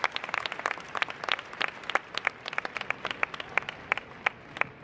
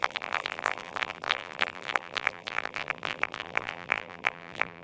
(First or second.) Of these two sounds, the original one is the first